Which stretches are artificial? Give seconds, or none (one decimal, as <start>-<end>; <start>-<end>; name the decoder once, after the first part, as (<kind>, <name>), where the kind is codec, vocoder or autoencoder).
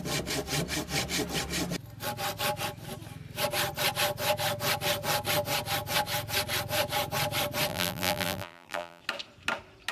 7.7-9.0 (vocoder, BigVGAN v2)